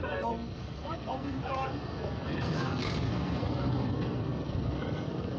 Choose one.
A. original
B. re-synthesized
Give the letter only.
B